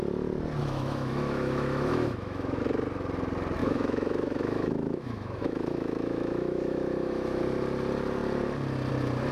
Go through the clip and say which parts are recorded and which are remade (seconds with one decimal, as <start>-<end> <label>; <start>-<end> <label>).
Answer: 0.0-0.6 recorded; 0.6-2.6 remade; 2.6-3.6 recorded; 3.6-7.4 remade; 7.4-9.3 recorded